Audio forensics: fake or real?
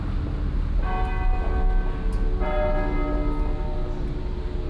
real